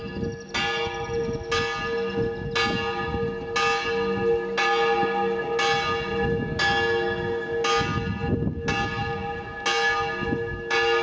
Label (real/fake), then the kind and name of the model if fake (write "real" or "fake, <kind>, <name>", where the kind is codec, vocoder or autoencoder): real